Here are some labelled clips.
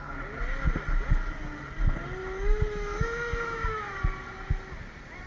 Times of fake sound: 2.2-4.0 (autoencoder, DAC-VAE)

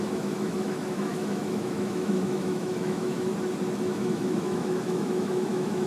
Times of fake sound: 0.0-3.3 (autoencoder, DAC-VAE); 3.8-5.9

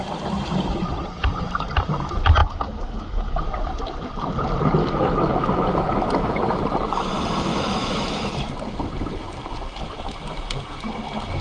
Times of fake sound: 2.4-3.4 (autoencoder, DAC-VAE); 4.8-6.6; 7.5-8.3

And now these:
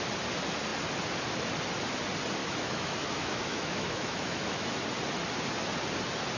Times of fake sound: 2.4-4.8 (autoencoder, DAC-VAE)